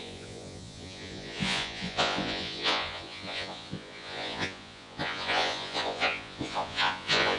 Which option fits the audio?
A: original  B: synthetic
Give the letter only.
B